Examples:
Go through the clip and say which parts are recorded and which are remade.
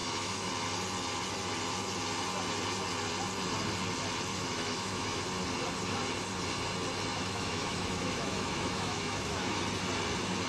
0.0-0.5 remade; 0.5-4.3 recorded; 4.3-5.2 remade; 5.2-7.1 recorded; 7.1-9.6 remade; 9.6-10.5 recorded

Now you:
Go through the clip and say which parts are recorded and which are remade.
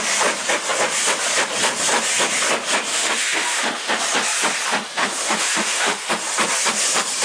0.0-2.9 recorded; 2.9-4.0 remade; 4.0-5.0 recorded; 5.0-6.1 remade; 6.1-7.2 recorded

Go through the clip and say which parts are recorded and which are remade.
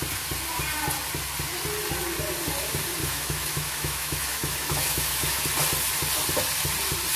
0.0-3.0 recorded; 3.0-5.4 remade; 5.4-7.2 recorded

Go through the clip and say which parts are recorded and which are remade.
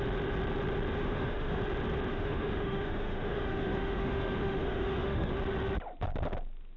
0.0-1.0 recorded; 1.0-1.6 remade; 1.6-2.1 recorded; 2.1-5.3 remade; 5.3-6.8 recorded